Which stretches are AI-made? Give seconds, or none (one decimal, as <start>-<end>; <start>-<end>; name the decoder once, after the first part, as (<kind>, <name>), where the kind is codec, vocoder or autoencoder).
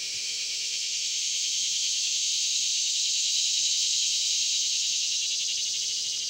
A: 0.0-5.2 (autoencoder, DAC-VAE)